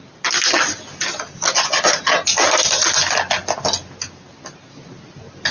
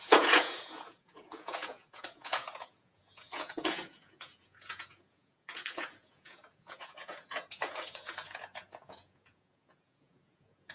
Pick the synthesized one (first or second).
second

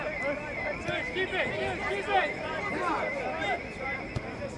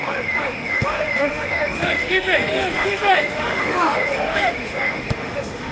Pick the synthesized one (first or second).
second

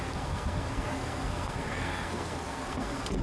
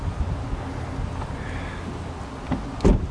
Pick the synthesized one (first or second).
first